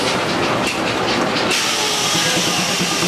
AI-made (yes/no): no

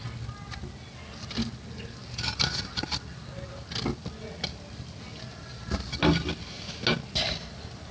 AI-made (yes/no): no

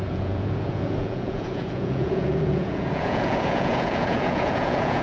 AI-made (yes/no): yes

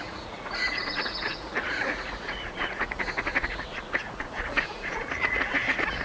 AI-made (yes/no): yes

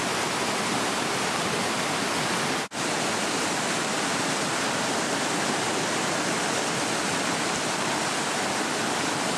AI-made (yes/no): no